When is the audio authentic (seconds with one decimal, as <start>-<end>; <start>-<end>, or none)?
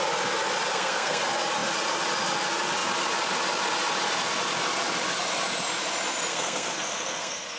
0.0-0.7; 1.2-6.3